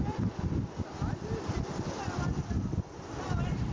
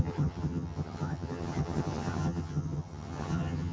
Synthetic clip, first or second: second